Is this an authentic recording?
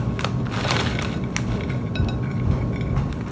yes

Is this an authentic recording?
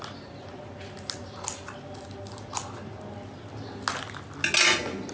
yes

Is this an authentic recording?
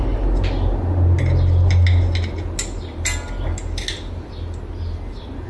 yes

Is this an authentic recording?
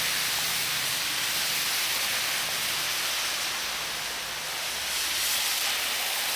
yes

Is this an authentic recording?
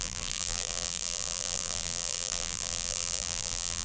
no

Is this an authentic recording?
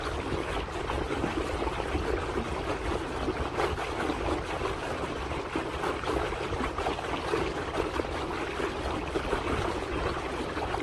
yes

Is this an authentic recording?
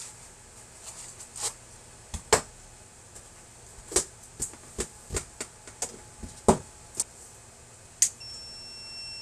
yes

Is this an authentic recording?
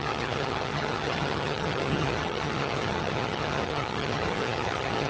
no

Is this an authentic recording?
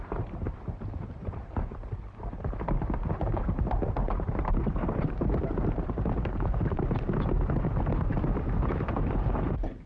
no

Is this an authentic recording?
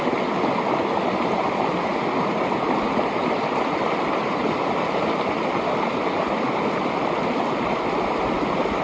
yes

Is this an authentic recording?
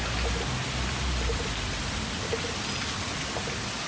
yes